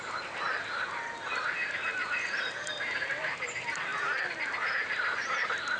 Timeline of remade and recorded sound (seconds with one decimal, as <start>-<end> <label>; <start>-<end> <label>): 0.0-5.8 recorded